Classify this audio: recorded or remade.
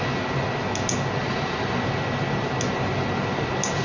recorded